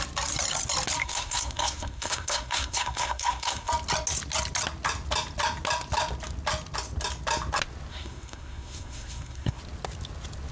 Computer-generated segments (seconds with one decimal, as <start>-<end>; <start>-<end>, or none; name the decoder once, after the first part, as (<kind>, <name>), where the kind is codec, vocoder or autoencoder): 1.0-3.7 (codec, SNAC); 7.9-9.6